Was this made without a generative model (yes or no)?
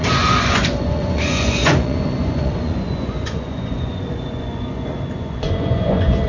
no